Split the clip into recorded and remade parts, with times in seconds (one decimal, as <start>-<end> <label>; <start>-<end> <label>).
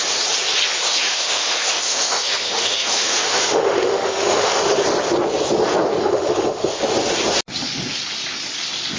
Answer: 0.0-0.9 recorded; 0.9-4.6 remade; 4.6-6.0 recorded; 6.0-6.8 remade; 6.8-9.0 recorded